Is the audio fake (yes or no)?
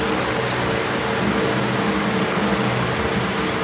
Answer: no